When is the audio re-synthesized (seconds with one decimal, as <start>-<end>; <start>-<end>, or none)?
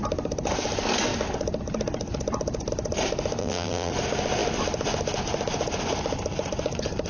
3.4-3.9